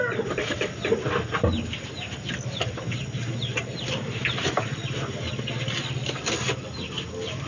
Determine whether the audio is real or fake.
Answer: real